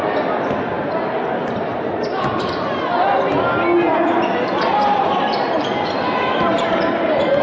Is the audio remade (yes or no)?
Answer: no